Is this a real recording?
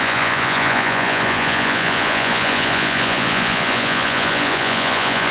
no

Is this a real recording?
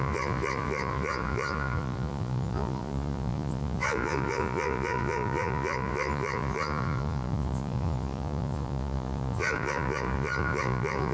no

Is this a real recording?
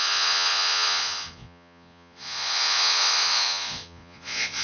no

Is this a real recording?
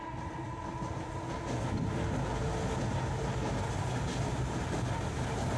yes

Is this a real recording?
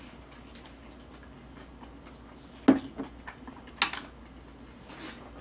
yes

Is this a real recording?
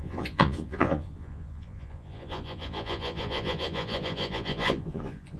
no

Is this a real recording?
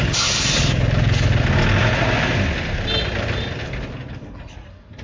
yes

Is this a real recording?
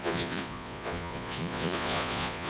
no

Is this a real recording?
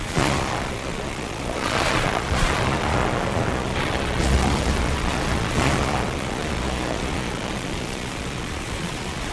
no